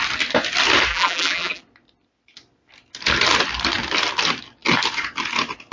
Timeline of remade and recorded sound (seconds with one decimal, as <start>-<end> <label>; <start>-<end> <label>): 0.0-0.9 recorded; 0.9-1.6 remade; 1.6-5.7 recorded